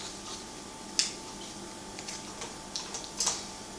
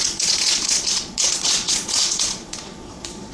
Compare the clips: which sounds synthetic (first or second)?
second